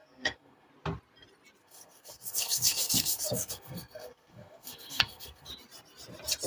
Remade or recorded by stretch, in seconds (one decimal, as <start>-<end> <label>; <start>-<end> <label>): 0.0-0.7 remade; 0.7-1.6 recorded; 1.6-5.5 remade; 5.5-6.5 recorded